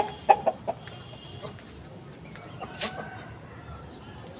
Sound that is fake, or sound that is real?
real